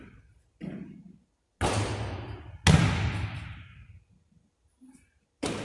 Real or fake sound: real